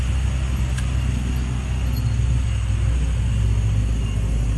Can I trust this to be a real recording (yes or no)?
yes